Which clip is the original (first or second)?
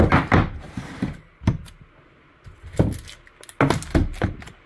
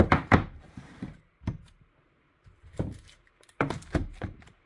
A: first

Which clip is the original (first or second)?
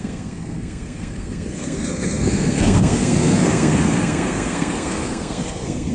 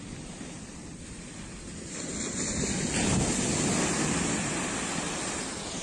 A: second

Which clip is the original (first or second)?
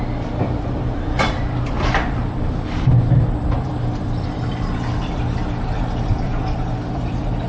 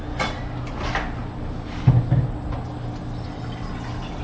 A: second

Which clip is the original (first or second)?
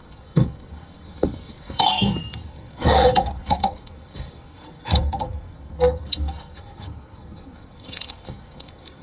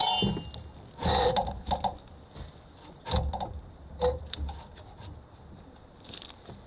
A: second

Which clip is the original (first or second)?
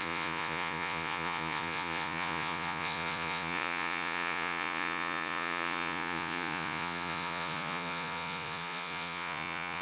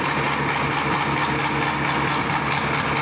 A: second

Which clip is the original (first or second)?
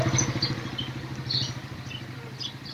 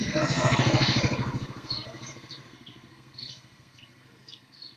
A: first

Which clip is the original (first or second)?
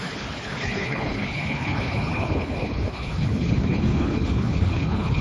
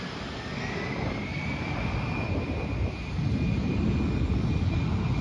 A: second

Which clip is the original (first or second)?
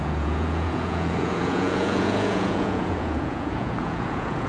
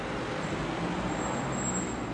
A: second